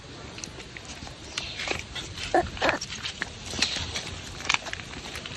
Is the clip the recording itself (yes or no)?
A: no